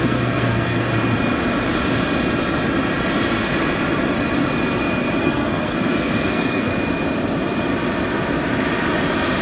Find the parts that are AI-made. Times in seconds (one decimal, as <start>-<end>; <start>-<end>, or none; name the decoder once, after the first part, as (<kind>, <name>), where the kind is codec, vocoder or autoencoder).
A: 0.0-0.9 (codec, SNAC); 5.2-6.7